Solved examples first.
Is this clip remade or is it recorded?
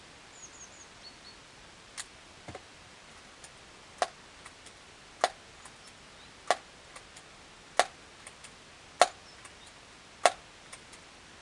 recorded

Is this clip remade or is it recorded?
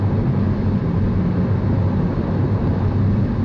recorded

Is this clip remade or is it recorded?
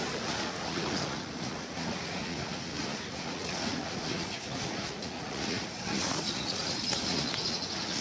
remade